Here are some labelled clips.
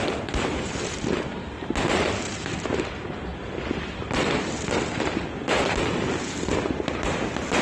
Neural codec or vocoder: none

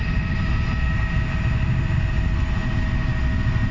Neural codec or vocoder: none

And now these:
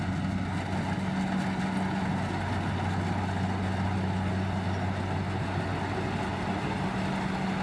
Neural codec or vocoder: none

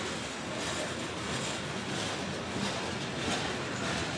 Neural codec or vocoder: none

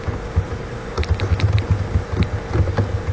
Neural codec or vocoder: none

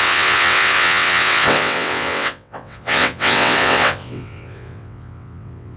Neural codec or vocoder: vocoder, WaveNeXt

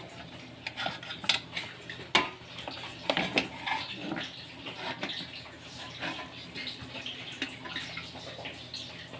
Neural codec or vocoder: none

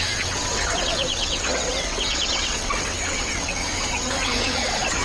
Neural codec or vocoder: vocoder, WaveNeXt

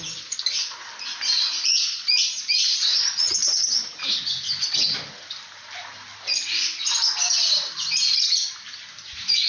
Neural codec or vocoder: none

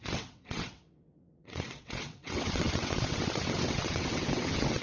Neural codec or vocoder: vocoder, WaveNeXt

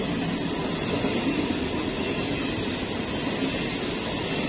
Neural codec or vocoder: none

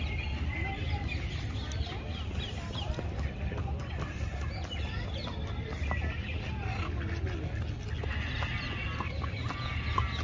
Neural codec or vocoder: none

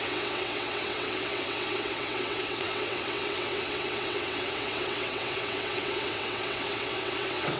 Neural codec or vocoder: vocoder, WaveNeXt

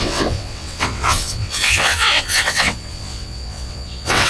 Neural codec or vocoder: vocoder, WaveNeXt